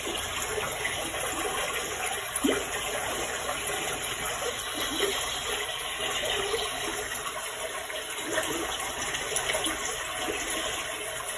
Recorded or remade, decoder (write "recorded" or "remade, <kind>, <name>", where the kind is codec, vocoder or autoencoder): remade, vocoder, BigVGAN v2